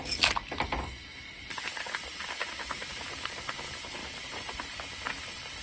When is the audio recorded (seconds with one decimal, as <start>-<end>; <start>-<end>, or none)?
0.0-1.1; 1.8-4.0; 4.9-5.6